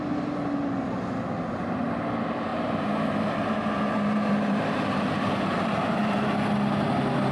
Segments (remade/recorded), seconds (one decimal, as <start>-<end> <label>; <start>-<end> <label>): 0.0-2.5 recorded; 2.5-6.3 remade; 6.3-7.3 recorded